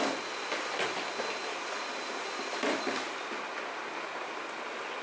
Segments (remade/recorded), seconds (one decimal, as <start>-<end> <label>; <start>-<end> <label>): 0.0-5.0 recorded